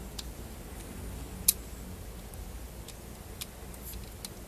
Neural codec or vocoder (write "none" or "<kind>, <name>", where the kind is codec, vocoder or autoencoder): none